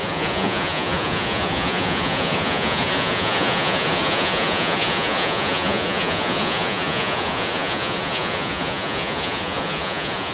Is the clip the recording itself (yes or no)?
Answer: no